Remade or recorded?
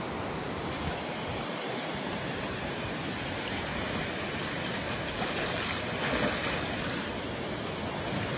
recorded